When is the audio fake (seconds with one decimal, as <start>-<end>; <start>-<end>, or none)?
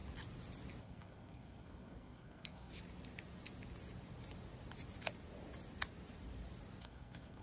0.8-2.7; 6.8-7.4